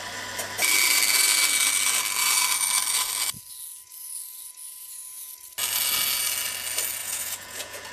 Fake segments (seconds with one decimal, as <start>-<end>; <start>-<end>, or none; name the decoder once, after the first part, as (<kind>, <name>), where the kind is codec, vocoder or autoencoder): 4.7-5.3 (vocoder, Vocos); 7.0-7.9